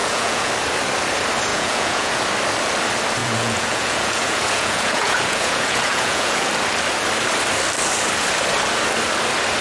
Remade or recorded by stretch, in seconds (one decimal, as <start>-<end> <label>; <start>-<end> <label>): 0.0-0.5 remade; 0.5-1.5 recorded; 1.5-2.2 remade; 2.2-3.2 recorded; 3.2-6.5 remade; 6.5-9.6 recorded